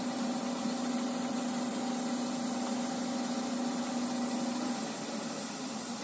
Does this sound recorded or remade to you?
recorded